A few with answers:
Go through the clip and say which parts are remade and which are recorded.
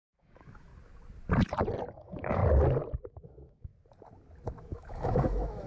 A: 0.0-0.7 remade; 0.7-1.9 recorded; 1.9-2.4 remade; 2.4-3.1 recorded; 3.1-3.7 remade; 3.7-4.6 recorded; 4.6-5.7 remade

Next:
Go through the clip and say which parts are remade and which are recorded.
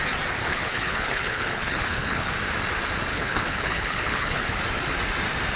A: 0.0-0.4 recorded; 0.4-2.3 remade; 2.3-3.1 recorded; 3.1-4.6 remade; 4.6-5.6 recorded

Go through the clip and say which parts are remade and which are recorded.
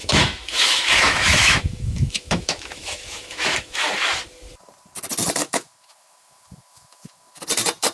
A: 0.0-3.9 remade; 3.9-5.4 recorded; 5.4-7.4 remade; 7.4-7.9 recorded